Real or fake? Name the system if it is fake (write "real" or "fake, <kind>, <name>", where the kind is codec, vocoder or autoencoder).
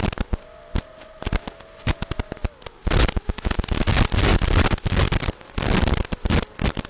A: real